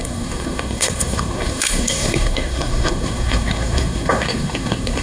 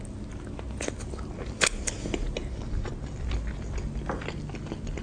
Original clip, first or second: second